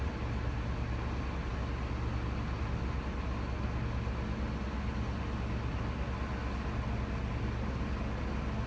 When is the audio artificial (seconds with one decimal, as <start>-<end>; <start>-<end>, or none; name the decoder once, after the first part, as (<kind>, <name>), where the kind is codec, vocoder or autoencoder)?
none